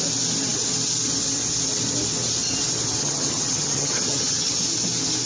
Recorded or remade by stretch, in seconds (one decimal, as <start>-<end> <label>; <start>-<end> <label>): 0.0-3.0 recorded; 3.0-4.5 remade; 4.5-5.3 recorded